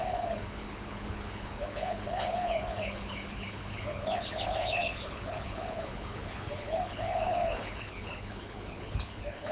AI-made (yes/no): yes